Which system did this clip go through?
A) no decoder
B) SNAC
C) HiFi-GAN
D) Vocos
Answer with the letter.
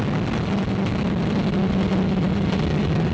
A